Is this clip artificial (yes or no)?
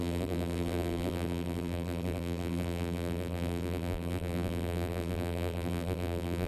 yes